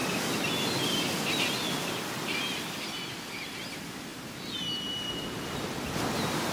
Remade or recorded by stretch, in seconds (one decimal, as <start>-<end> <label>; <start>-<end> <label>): 0.0-6.5 recorded